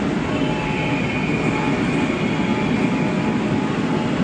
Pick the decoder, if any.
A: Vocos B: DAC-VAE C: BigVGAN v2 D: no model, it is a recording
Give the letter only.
D